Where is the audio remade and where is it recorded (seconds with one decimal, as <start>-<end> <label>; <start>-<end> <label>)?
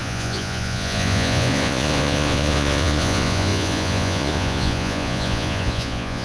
0.0-6.2 remade